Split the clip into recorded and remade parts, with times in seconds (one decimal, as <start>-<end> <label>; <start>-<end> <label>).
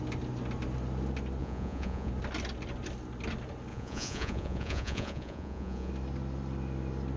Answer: 0.0-1.4 recorded; 1.4-2.1 remade; 2.1-3.7 recorded; 3.7-5.9 remade; 5.9-7.2 recorded